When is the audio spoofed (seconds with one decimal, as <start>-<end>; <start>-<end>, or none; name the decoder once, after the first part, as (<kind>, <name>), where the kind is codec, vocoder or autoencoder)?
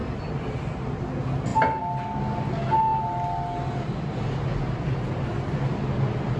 none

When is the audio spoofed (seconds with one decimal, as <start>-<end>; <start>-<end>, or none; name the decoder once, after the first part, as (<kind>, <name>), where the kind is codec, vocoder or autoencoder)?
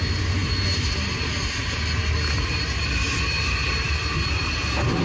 none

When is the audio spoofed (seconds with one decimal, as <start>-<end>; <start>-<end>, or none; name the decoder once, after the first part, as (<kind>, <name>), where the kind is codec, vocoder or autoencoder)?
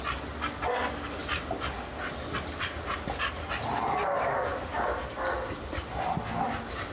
none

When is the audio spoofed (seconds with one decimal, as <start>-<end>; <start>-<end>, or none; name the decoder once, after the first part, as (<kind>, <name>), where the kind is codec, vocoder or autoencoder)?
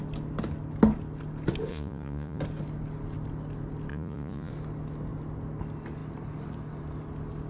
1.7-2.4 (vocoder, Vocos); 3.9-4.5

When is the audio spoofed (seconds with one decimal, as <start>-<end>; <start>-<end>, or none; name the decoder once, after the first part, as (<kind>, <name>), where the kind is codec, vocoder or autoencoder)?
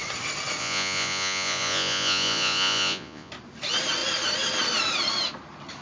0.6-3.3 (vocoder, Vocos)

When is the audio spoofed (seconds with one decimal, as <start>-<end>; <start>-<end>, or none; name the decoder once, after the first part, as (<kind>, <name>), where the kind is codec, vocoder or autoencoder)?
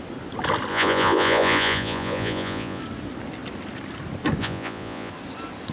0.7-2.8 (vocoder, Vocos); 4.4-5.1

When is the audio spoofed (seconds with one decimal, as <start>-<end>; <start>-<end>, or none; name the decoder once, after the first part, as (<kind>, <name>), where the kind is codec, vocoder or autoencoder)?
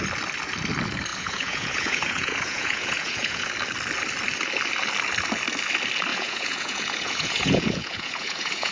1.1-3.5 (vocoder, Vocos); 6.1-8.7